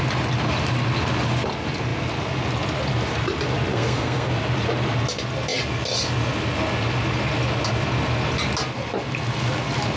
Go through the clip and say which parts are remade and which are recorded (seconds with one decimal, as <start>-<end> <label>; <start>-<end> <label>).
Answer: 0.0-3.7 recorded; 3.7-4.3 remade; 4.3-10.0 recorded